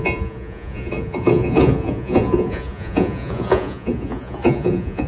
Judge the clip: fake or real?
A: fake